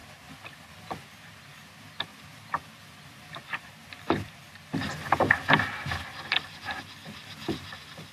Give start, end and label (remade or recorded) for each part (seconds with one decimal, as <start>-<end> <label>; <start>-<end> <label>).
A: 0.0-2.1 recorded; 2.1-4.4 remade; 4.4-8.1 recorded